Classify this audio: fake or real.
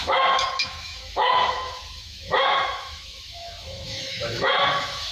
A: fake